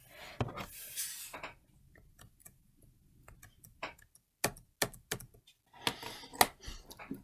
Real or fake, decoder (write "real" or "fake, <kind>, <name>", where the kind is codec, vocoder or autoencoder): real